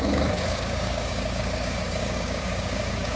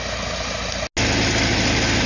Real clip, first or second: second